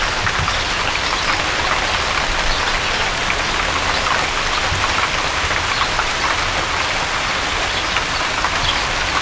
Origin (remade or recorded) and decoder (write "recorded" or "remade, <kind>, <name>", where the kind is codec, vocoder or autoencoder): recorded